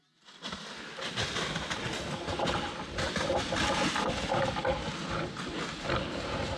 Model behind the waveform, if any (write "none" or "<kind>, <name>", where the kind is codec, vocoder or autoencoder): none